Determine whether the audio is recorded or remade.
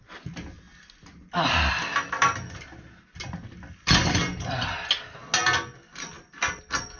recorded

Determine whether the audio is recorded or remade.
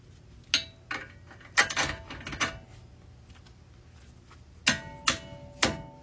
recorded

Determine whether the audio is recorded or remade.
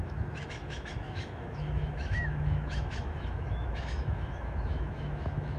remade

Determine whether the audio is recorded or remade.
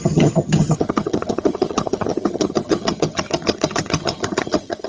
remade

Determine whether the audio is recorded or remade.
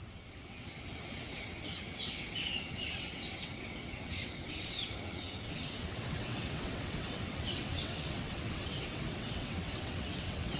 remade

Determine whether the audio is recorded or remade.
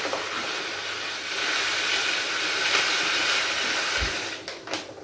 recorded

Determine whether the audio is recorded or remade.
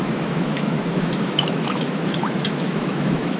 remade